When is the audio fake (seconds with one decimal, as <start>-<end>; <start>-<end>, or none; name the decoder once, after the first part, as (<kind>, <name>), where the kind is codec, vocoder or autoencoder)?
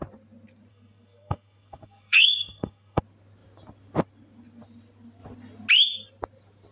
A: 0.7-3.0 (codec, SNAC)